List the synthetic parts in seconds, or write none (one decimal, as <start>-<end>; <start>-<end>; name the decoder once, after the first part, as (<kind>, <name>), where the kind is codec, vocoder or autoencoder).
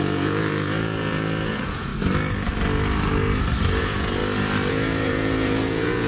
0.0-1.9 (vocoder, Vocos); 3.8-4.2; 4.7-6.1